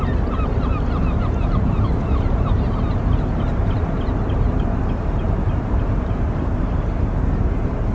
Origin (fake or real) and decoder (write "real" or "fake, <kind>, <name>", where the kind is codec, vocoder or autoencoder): fake, vocoder, BigVGAN v2